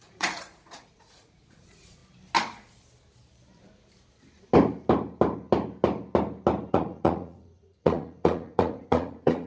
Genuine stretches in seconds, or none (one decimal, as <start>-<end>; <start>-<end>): 2.0-6.7